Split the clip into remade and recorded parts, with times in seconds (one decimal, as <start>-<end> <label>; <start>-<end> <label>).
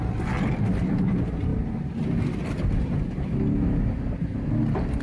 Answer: 0.0-5.0 recorded